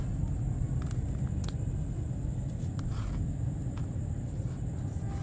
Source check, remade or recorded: recorded